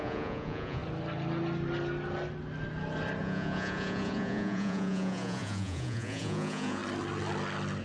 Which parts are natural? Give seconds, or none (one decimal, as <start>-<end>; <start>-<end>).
0.8-3.2; 6.8-7.8